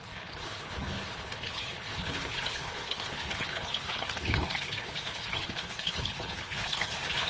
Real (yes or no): no